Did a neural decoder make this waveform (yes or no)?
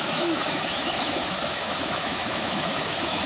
yes